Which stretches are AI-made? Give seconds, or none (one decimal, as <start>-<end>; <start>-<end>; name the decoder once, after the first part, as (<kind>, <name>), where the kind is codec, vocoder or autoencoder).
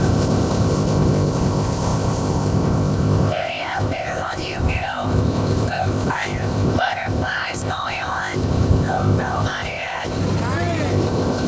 0.0-10.2 (codec, ZipCodec); 10.9-11.5